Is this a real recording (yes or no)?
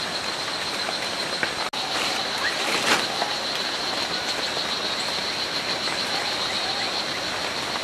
yes